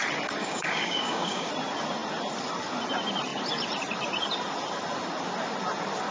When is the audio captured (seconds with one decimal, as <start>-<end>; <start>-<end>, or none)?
0.0-0.4; 1.5-6.1